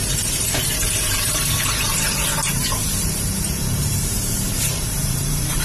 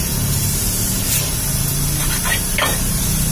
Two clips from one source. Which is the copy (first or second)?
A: first